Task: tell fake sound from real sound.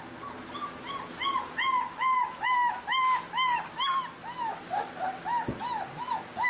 real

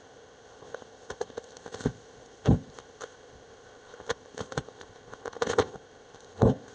fake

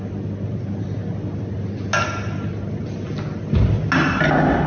real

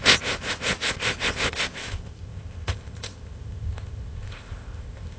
fake